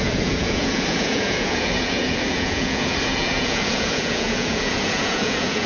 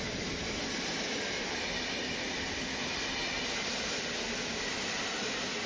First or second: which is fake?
first